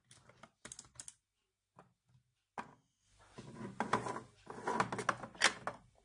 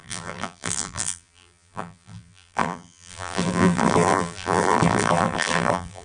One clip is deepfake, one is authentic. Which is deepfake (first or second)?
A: second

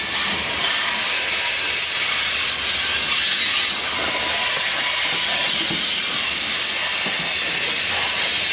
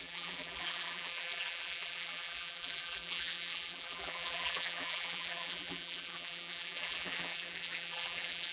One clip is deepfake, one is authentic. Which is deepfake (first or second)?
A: second